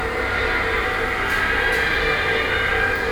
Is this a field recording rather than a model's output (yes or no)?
yes